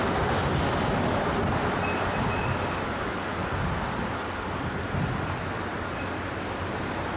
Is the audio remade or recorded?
recorded